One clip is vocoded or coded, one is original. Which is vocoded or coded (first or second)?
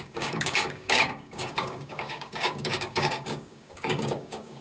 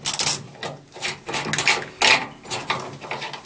first